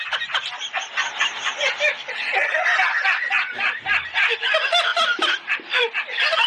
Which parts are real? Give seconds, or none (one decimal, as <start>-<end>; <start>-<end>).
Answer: 0.0-4.9; 5.8-6.5